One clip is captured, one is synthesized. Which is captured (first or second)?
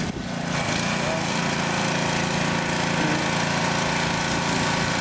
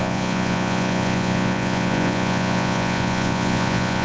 first